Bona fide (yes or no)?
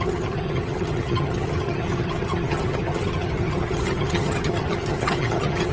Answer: no